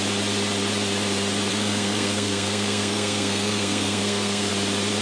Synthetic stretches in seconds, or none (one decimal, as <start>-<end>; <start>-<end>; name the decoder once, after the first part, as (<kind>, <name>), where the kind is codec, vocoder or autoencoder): 1.5-4.5 (codec, SNAC)